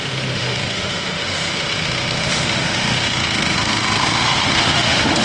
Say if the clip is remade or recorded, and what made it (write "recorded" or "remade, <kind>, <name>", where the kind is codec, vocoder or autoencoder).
remade, autoencoder, DAC-VAE